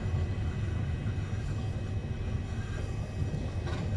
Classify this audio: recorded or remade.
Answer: recorded